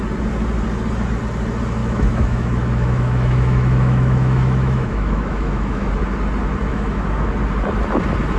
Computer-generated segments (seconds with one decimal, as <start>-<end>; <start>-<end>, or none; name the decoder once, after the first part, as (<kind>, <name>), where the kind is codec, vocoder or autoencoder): 1.8-5.9 (autoencoder, DAC-VAE); 6.7-7.3